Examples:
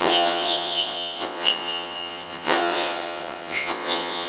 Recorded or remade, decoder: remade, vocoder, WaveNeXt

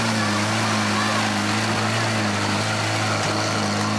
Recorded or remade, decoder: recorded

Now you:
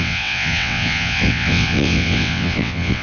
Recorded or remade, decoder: remade, vocoder, WaveNeXt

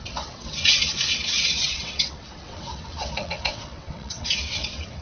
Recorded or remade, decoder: remade, vocoder, WaveNeXt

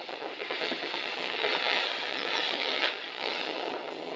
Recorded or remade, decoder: remade, vocoder, WaveNeXt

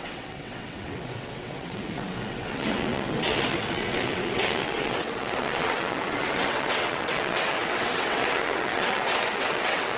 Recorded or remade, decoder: remade, vocoder, WaveNeXt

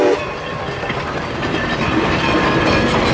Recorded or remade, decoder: recorded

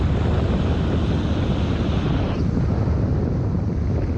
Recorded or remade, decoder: recorded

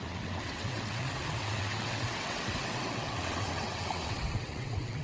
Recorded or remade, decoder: remade, vocoder, WaveNeXt